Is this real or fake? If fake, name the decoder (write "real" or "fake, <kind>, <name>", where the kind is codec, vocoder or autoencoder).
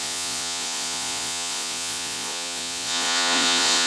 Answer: fake, vocoder, Vocos